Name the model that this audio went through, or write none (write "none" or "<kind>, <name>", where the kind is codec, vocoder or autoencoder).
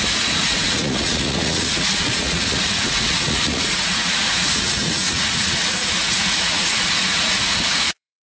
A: vocoder, Vocos